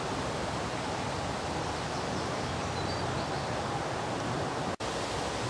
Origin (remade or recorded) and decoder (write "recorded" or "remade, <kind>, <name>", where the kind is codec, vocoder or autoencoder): recorded